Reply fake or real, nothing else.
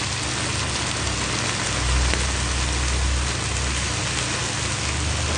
real